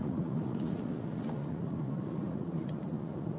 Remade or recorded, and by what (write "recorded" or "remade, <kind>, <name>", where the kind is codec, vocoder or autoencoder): remade, vocoder, Vocos